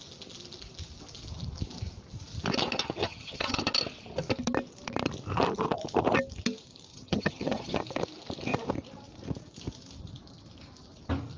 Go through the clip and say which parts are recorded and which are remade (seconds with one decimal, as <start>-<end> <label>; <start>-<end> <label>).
0.0-3.0 recorded; 3.0-3.6 remade; 3.6-6.9 recorded; 6.9-7.8 remade; 7.8-11.4 recorded